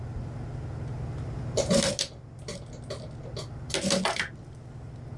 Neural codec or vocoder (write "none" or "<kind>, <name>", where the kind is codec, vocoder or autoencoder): none